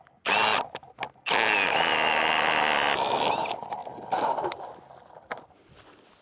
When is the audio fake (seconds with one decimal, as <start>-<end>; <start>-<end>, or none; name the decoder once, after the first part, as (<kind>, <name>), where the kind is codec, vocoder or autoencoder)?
none